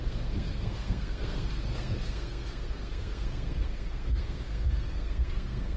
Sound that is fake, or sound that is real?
fake